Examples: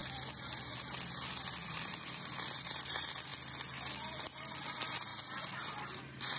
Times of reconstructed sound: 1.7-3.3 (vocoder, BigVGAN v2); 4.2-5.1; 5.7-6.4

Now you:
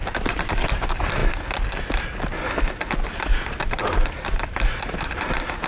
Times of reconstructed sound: none

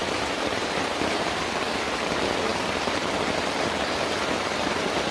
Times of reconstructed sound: 0.0-1.4 (vocoder, BigVGAN v2)

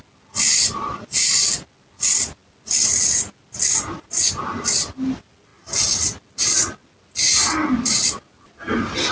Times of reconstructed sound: none

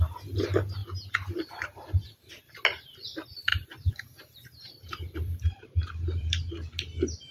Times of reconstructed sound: 0.8-2.4 (vocoder, BigVGAN v2); 3.5-6.5

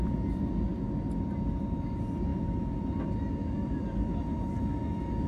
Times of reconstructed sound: 2.3-2.9 (vocoder, BigVGAN v2); 3.4-4.6